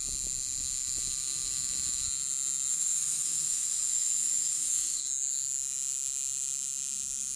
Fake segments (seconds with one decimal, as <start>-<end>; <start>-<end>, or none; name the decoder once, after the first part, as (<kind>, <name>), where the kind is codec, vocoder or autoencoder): 2.7-5.0 (autoencoder, DAC-VAE)